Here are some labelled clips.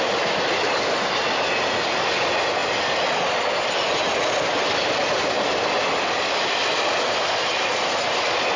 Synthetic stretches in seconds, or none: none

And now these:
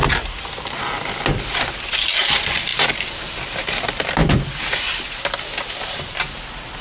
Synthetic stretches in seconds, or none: 0.0-0.8 (vocoder, BigVGAN v2); 2.7-3.3

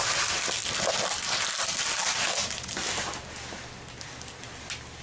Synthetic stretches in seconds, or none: none

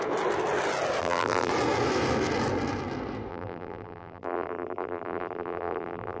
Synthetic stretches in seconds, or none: 1.0-1.5 (vocoder, BigVGAN v2); 3.3-6.2

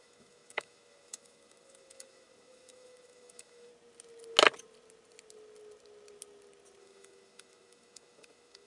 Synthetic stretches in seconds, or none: 0.0-3.7 (autoencoder, DAC-VAE); 6.8-8.7

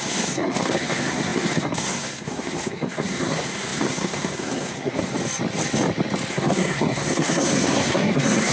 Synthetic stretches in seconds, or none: 0.0-5.1 (codec, SNAC); 6.3-8.5

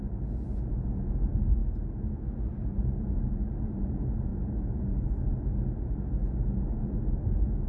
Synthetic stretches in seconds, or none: none

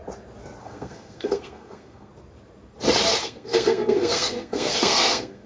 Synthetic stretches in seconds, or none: 0.6-2.1 (codec, SNAC); 3.2-5.5